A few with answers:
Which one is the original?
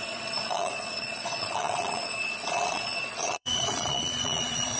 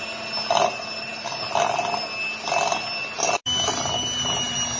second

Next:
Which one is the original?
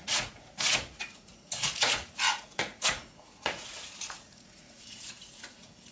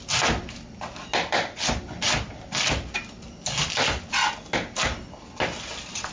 second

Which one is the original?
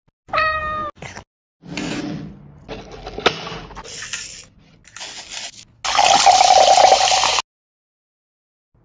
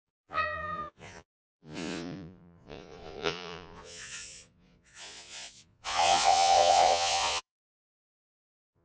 first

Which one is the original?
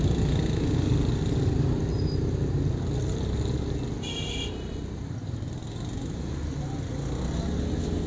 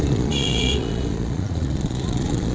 first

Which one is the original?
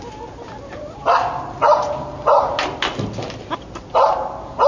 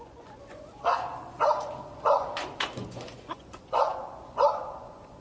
first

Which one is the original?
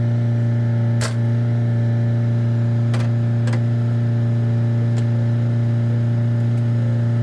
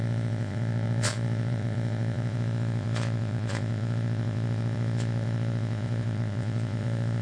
first